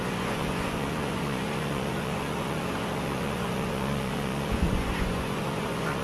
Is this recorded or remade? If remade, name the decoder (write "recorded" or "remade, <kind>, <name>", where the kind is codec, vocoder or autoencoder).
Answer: remade, vocoder, Vocos